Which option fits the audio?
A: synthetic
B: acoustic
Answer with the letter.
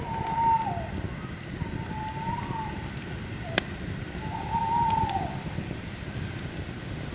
B